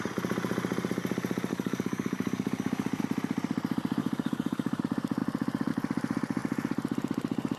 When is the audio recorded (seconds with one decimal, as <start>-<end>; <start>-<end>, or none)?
0.0-1.5; 3.0-4.0; 4.8-7.6